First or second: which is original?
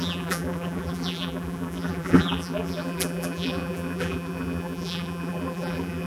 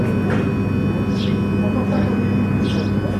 second